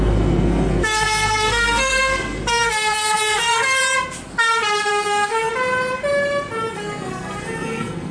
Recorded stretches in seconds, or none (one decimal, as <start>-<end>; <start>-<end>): 3.8-4.9; 5.5-6.7